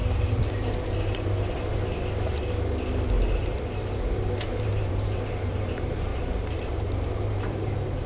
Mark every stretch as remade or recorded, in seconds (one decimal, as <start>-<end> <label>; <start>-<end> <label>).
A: 0.0-4.4 recorded; 4.4-6.1 remade; 6.1-6.6 recorded; 6.6-8.1 remade

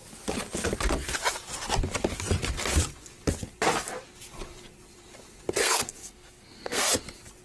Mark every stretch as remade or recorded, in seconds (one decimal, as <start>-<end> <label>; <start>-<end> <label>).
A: 0.0-5.6 recorded; 5.6-6.9 remade; 6.9-7.4 recorded